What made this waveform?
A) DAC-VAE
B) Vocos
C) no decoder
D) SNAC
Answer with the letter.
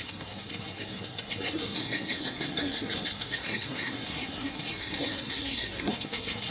D